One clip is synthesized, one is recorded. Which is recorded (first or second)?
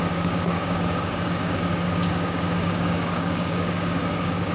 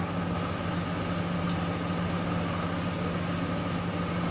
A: second